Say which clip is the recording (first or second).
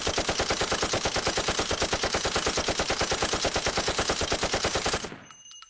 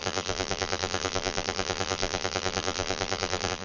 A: first